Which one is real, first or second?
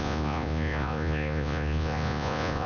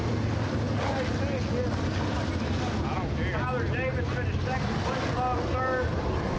second